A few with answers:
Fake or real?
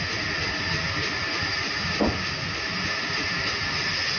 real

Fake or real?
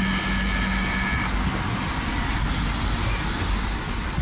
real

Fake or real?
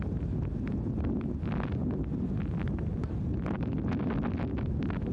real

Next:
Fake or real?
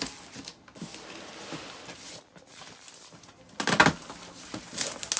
real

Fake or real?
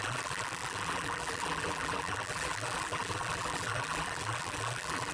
fake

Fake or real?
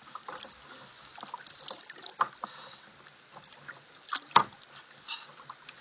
real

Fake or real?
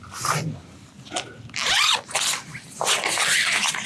real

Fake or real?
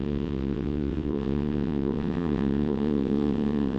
fake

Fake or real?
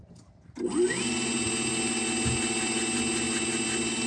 real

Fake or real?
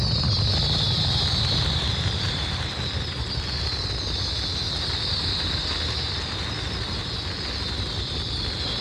real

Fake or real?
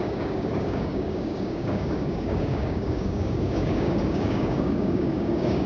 fake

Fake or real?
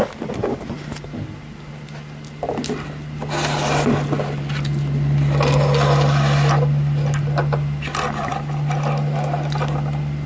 real